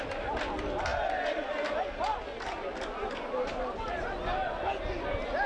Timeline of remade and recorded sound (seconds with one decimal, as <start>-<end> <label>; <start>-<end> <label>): 0.0-5.5 recorded